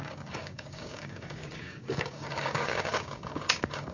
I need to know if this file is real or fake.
fake